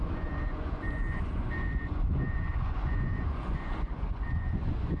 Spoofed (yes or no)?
yes